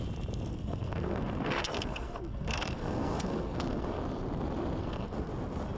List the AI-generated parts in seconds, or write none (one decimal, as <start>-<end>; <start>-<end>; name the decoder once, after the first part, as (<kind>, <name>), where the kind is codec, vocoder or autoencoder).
0.5-4.0 (codec, SNAC); 4.8-5.3